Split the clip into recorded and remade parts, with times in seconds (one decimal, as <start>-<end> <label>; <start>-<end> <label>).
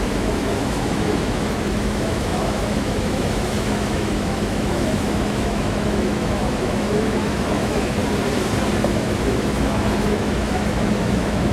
0.0-8.0 remade; 8.0-8.8 recorded; 8.8-11.5 remade